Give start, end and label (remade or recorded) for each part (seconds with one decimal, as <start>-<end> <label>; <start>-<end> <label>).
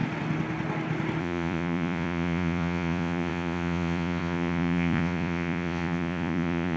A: 0.0-1.2 recorded; 1.2-6.8 remade